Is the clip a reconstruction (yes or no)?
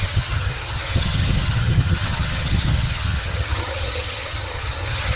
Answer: yes